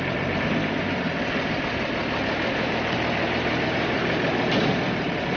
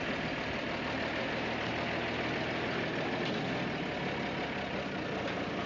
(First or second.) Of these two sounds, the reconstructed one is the first